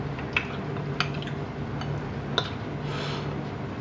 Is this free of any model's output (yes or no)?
yes